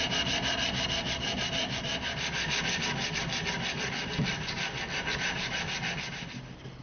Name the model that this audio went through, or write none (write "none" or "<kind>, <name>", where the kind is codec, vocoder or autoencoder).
none